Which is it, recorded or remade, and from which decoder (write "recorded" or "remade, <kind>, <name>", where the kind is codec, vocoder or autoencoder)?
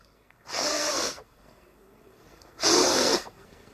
remade, codec, SNAC